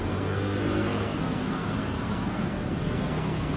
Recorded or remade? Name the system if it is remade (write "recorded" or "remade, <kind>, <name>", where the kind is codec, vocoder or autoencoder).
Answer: remade, codec, SNAC